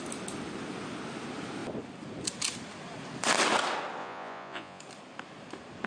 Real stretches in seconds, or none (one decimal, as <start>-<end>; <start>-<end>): 0.0-4.0; 4.8-5.9